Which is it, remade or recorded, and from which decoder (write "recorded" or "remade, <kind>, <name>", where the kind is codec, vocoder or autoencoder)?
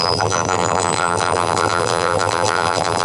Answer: remade, vocoder, BigVGAN v2